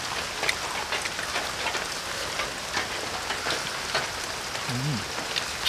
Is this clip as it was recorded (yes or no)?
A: yes